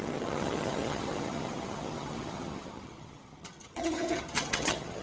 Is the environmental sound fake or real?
fake